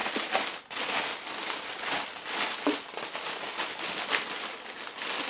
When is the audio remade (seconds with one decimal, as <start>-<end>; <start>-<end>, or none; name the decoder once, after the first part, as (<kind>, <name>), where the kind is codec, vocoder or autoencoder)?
none